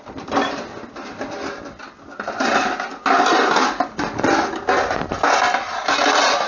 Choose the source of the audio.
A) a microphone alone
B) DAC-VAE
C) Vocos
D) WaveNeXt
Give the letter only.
A